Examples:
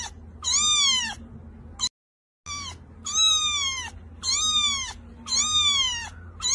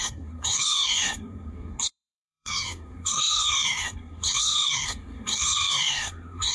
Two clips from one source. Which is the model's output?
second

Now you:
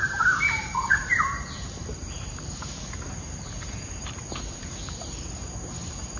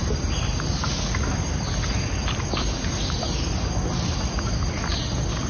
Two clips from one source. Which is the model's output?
first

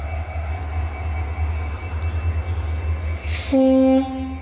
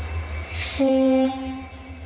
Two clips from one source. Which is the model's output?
second